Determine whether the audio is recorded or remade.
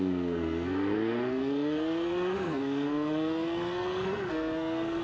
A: remade